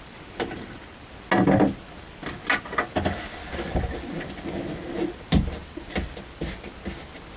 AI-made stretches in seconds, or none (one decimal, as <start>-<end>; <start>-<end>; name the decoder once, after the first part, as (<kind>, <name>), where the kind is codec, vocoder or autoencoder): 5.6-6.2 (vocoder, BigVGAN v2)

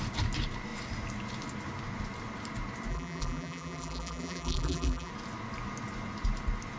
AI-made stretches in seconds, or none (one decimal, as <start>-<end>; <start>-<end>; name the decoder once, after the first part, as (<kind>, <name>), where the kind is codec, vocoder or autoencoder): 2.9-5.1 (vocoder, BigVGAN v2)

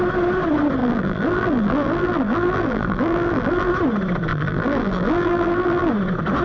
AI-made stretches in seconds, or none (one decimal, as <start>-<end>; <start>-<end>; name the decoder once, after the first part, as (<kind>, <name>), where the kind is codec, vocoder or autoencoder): 0.8-3.7 (vocoder, BigVGAN v2); 4.3-5.9